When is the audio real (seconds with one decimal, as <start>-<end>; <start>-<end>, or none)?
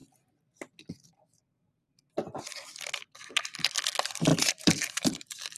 0.0-4.3